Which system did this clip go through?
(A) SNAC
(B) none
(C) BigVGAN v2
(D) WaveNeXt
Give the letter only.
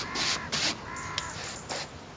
B